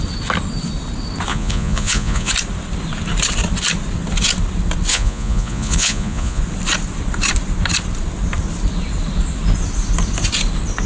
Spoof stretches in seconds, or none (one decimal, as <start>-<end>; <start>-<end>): 1.3-2.3; 4.9-6.4